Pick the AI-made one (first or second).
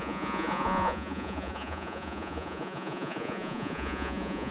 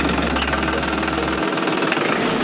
first